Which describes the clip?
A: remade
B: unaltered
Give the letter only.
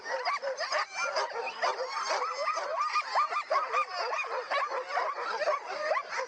B